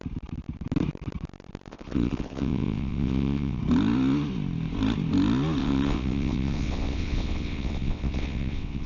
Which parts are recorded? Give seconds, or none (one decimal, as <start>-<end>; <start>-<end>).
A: 0.0-1.7; 3.6-5.6